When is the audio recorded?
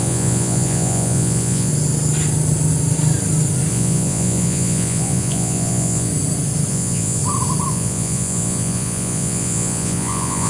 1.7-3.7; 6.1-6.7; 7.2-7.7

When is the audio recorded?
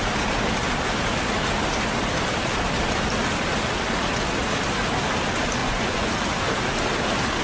0.0-5.6; 6.1-7.4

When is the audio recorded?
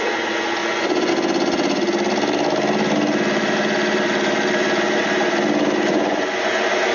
0.0-0.6; 1.1-5.9; 6.5-6.9